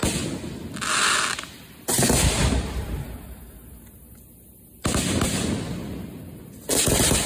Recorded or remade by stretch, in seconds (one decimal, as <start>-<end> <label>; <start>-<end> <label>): 0.0-7.3 recorded

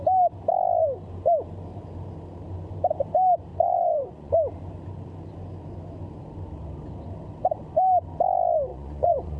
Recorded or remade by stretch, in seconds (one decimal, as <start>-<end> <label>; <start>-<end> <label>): 0.0-3.5 recorded; 3.5-4.3 remade; 4.3-8.7 recorded; 8.7-9.4 remade

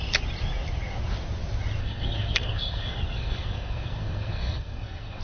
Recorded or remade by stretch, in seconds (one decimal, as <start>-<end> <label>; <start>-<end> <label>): 0.0-1.8 recorded; 1.8-5.2 remade

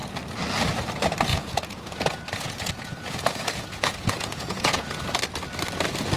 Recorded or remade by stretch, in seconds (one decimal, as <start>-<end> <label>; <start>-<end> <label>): 0.0-1.3 recorded; 1.3-5.0 remade; 5.0-6.2 recorded

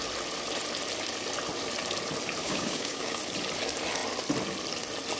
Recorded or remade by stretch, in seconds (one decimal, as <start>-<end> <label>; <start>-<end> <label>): 0.0-2.4 recorded; 2.4-3.2 remade; 3.2-5.2 recorded

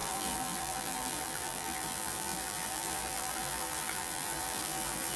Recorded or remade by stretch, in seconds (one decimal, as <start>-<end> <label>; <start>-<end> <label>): 0.0-5.2 remade

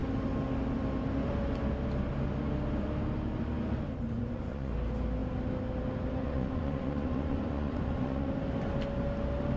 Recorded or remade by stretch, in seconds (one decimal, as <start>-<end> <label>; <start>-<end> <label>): 0.0-4.1 recorded; 4.1-4.7 remade; 4.7-6.2 recorded; 6.2-8.3 remade; 8.3-9.6 recorded